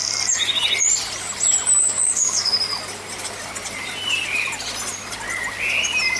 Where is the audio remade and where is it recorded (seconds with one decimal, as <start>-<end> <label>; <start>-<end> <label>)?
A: 0.0-1.8 recorded; 1.8-2.5 remade; 2.5-6.2 recorded